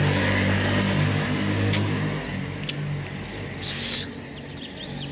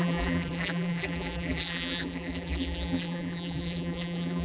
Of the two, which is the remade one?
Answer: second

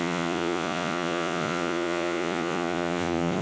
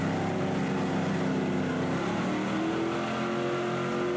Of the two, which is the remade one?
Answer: first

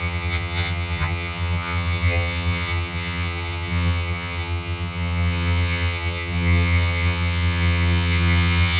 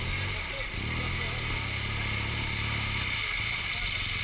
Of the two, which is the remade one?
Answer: first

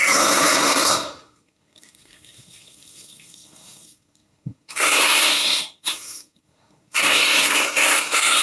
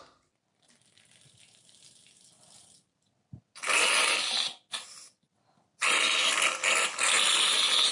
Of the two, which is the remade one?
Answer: first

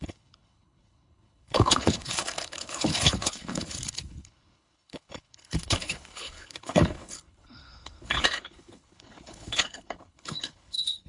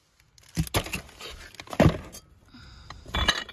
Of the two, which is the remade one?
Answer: first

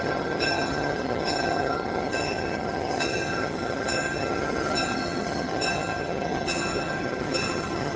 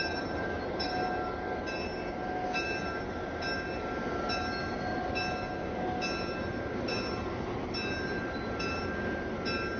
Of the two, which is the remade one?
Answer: first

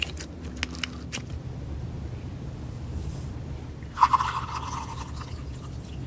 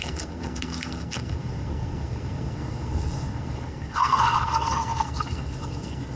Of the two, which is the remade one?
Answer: second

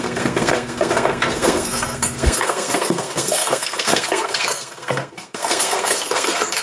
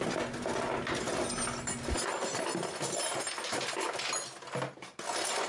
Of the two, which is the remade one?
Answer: first